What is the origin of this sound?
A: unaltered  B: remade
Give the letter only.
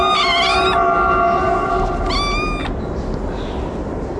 A